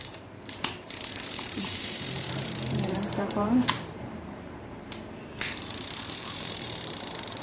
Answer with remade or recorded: remade